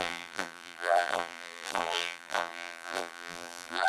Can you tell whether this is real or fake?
fake